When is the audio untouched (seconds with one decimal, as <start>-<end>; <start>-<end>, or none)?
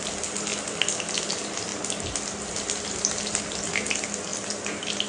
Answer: 0.0-5.1